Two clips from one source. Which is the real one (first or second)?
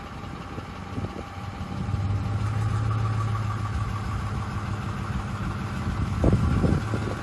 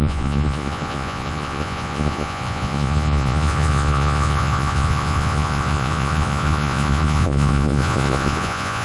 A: first